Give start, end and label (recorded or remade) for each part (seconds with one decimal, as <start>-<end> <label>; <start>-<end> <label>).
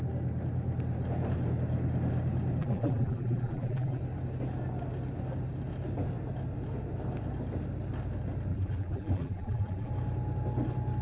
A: 0.0-2.6 recorded; 2.6-4.0 remade; 4.0-8.5 recorded; 8.5-9.9 remade; 9.9-11.0 recorded